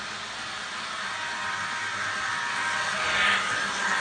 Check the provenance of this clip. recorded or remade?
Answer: recorded